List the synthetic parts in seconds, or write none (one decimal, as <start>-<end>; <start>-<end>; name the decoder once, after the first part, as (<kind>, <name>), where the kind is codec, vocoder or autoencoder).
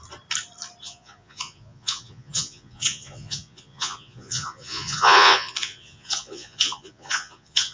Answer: 0.8-7.7 (vocoder, Vocos)